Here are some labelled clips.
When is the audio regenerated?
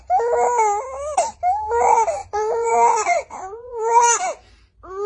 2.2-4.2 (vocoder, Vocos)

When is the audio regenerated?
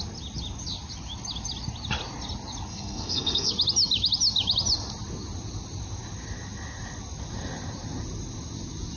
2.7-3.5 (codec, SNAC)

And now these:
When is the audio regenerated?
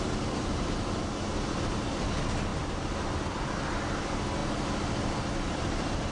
none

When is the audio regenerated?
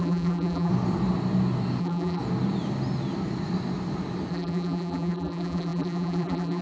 0.0-0.7 (vocoder, BigVGAN v2); 1.8-2.2; 4.3-6.6